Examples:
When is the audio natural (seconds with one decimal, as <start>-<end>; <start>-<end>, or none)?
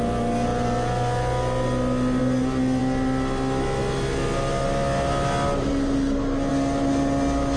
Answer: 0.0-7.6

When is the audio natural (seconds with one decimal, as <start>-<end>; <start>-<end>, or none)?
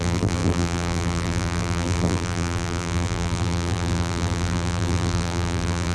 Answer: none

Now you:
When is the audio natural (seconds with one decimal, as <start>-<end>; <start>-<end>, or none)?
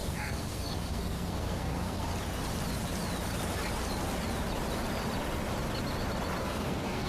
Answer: 2.1-6.4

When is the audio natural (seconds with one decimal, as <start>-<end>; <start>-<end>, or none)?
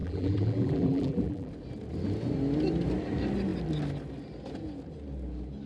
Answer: 1.5-5.7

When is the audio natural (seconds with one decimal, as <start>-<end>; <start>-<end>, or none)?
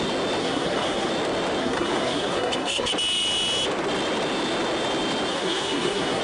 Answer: 0.0-0.4; 1.1-1.6; 2.9-5.3